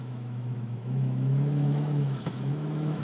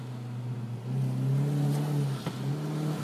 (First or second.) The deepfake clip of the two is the first